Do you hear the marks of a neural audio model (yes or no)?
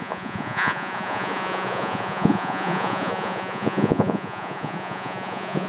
yes